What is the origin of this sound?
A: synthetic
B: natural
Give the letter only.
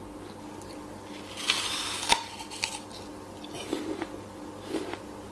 B